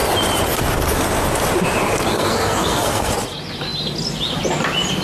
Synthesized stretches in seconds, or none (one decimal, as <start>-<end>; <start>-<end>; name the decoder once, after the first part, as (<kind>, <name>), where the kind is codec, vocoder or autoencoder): 2.1-3.1 (codec, SNAC)

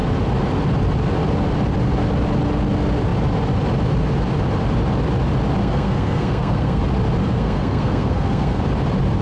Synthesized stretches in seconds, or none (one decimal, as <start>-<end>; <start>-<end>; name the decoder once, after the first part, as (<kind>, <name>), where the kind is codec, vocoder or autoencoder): 5.6-6.8 (codec, SNAC); 7.2-8.6

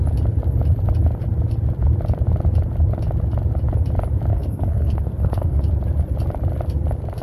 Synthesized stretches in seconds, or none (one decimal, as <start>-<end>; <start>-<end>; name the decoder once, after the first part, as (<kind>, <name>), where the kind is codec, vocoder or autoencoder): 4.3-5.6 (codec, SNAC)

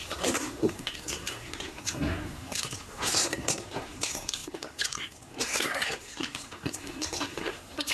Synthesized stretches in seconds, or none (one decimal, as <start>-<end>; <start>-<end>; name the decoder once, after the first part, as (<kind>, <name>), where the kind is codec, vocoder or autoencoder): 0.0-7.9 (codec, SNAC)